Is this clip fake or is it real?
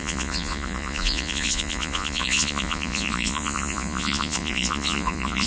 fake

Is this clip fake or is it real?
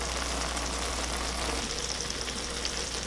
real